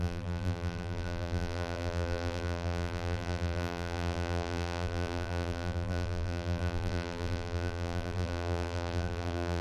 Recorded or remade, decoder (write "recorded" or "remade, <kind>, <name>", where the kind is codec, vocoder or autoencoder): remade, vocoder, BigVGAN v2